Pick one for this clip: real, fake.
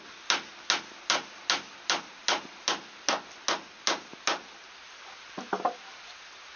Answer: real